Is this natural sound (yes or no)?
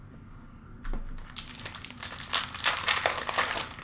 yes